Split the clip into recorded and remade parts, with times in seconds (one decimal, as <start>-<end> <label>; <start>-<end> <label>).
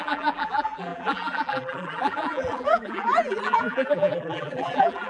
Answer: 0.0-5.1 remade